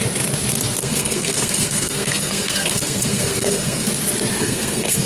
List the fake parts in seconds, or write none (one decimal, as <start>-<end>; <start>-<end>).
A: 0.8-3.9; 4.4-5.1